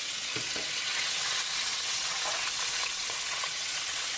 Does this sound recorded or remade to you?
remade